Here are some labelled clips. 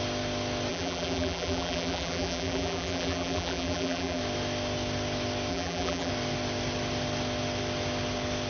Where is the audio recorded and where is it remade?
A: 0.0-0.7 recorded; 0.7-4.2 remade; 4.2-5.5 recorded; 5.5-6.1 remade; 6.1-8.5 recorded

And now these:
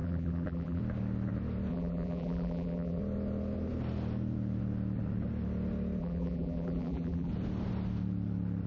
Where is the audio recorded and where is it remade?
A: 0.0-0.8 remade; 0.8-1.7 recorded; 1.7-3.0 remade; 3.0-6.0 recorded; 6.0-7.3 remade; 7.3-8.7 recorded